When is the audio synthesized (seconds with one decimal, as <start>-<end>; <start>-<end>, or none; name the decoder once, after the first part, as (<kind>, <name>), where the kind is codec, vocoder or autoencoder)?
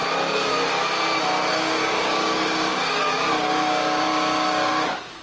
1.5-5.2 (codec, DAC)